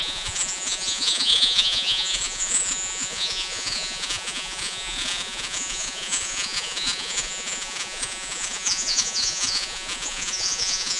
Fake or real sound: fake